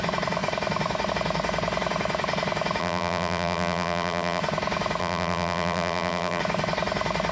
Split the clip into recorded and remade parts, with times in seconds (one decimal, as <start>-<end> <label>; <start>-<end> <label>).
0.0-2.8 recorded; 2.8-4.4 remade; 4.4-5.0 recorded; 5.0-6.4 remade; 6.4-7.3 recorded